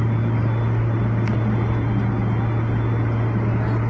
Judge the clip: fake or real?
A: real